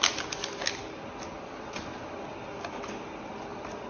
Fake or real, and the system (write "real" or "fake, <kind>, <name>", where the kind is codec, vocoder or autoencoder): real